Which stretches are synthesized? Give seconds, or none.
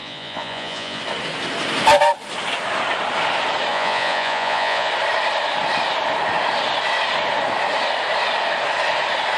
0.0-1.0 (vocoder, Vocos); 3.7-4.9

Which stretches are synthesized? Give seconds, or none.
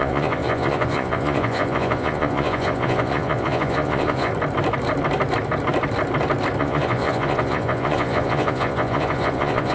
0.0-4.3 (vocoder, Vocos); 6.6-9.7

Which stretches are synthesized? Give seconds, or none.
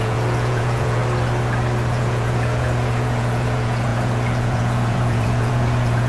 0.0-1.0 (vocoder, Vocos); 1.9-6.1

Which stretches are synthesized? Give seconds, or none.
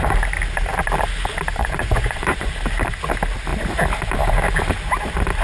1.6-2.5 (vocoder, Vocos)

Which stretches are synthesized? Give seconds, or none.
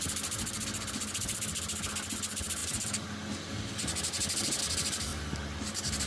none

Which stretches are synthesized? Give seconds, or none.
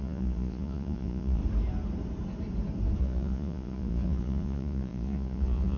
0.0-1.4 (vocoder, Vocos); 3.0-5.8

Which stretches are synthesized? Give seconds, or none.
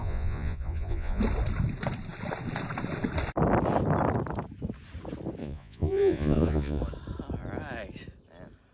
0.0-1.2 (vocoder, Vocos); 5.4-6.8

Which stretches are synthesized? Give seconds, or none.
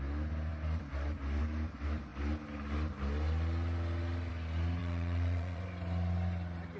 4.8-5.6 (vocoder, Vocos)